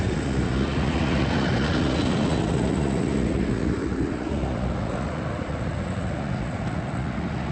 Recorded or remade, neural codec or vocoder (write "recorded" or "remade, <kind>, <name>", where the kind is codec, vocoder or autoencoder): remade, vocoder, Vocos